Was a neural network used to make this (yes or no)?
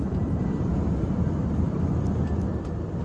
no